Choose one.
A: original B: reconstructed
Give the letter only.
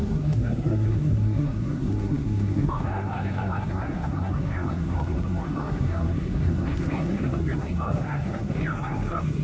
B